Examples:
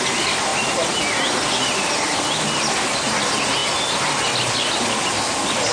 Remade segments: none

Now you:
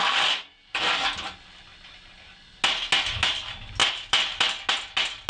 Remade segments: none

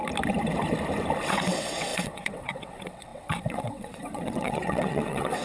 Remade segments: 1.2-5.4 (vocoder, WaveNeXt)